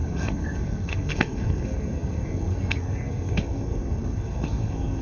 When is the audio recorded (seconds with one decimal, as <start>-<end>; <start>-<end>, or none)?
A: none